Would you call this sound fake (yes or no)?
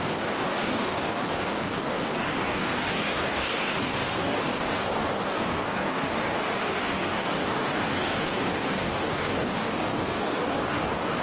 yes